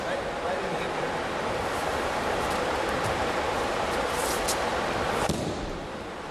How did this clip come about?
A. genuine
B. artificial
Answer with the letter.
B